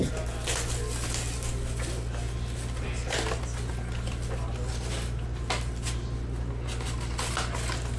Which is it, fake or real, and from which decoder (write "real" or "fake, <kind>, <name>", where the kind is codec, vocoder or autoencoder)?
real